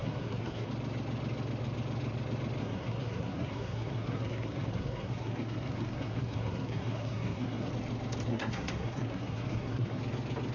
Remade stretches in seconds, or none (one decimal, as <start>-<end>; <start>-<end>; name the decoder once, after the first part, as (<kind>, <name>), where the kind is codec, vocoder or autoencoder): 0.0-0.7 (codec, SNAC); 2.6-7.7; 8.3-10.0